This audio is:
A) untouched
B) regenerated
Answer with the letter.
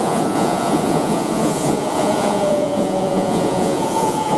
B